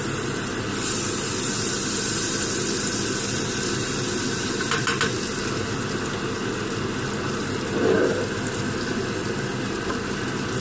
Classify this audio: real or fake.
real